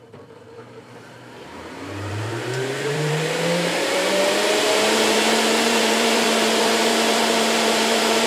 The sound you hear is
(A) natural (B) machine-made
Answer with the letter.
B